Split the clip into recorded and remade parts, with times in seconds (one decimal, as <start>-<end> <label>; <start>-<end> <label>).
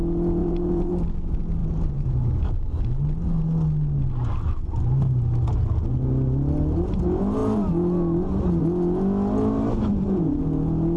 0.0-0.4 recorded; 0.4-0.9 remade; 0.9-1.6 recorded; 1.6-2.7 remade; 2.7-9.9 recorded; 9.9-10.4 remade; 10.4-11.0 recorded